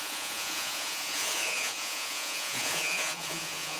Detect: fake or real fake